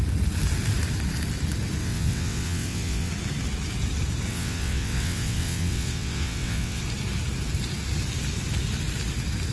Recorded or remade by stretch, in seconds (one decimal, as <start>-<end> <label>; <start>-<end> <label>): 0.0-1.8 recorded; 1.8-3.1 remade; 3.1-4.3 recorded; 4.3-6.8 remade; 6.8-9.5 recorded